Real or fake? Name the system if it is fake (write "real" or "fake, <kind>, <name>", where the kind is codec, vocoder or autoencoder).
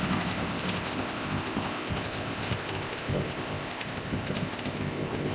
fake, codec, ZipCodec